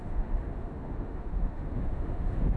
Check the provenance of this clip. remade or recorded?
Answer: remade